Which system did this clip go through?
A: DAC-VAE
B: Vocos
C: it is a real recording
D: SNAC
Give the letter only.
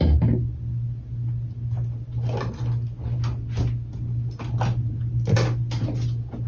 C